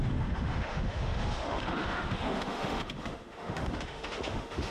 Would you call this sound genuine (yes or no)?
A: no